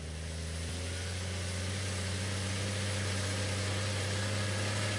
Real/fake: real